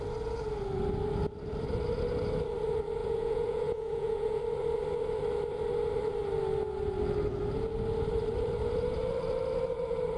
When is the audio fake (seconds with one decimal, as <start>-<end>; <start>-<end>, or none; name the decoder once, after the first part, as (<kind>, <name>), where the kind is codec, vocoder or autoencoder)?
3.0-4.4 (vocoder, Vocos)